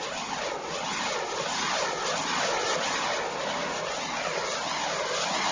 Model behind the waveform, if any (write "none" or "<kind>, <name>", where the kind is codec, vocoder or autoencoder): none